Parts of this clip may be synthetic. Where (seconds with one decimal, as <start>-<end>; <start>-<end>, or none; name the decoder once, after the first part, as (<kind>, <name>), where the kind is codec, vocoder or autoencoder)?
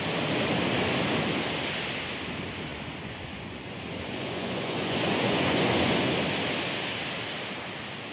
2.7-6.1 (vocoder, Vocos)